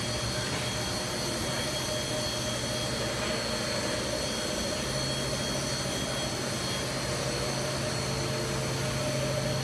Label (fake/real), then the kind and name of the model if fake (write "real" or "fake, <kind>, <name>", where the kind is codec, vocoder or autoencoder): real